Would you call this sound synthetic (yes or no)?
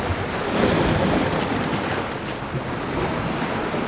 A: no